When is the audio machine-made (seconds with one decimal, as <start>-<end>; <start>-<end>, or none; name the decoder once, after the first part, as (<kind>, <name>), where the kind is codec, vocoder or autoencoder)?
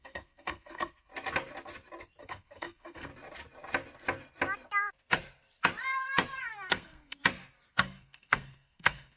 0.0-1.1 (codec, SNAC); 2.2-3.1; 6.4-7.2; 7.7-9.2